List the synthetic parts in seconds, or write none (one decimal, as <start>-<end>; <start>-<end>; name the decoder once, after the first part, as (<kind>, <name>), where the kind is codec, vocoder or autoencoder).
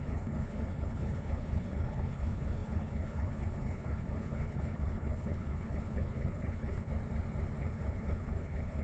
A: 0.0-6.9 (codec, HILCodec); 7.6-8.8